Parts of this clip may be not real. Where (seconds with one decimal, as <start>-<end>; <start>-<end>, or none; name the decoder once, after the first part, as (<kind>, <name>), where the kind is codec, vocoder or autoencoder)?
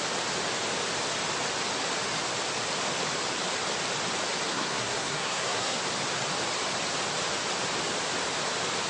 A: 4.5-5.8 (codec, SNAC)